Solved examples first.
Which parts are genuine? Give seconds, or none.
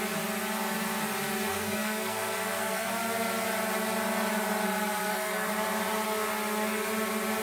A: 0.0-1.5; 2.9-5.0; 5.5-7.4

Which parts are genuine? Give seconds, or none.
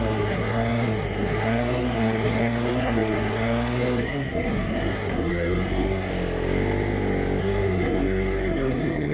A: 6.1-7.4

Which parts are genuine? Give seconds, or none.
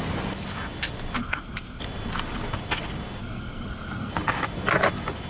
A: 0.0-1.2; 1.8-3.2; 4.1-5.3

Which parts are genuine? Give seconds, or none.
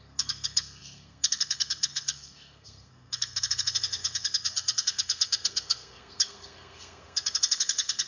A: none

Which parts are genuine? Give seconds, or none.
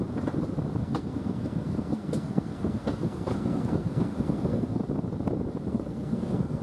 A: 0.0-0.8; 4.8-5.7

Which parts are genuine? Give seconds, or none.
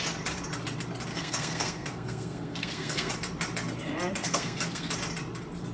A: 0.0-1.1; 3.1-4.2; 4.9-5.7